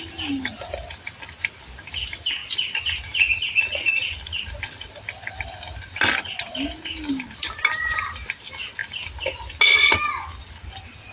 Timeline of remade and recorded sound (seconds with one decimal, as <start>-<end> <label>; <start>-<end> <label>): 0.0-11.1 recorded